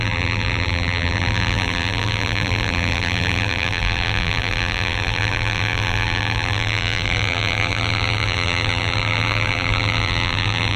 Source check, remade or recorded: remade